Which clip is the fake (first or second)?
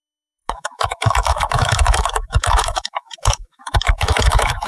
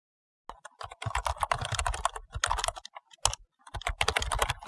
first